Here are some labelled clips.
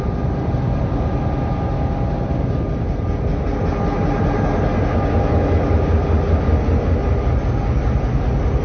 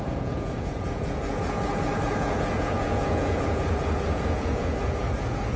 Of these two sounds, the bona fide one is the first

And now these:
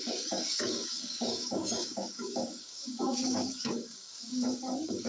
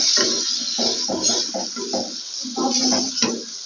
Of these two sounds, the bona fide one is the second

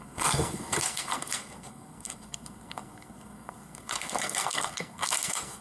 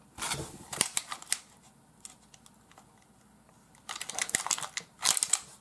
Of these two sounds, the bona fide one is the second